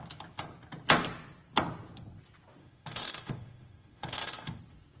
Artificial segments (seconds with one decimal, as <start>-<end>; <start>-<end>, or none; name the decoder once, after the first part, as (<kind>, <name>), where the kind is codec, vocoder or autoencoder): 2.6-4.6 (autoencoder, DAC-VAE)